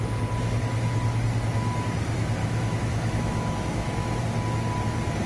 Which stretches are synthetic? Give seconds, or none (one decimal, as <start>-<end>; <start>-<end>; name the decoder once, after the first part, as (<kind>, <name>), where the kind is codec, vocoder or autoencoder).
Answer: 2.4-4.2 (autoencoder, DAC-VAE)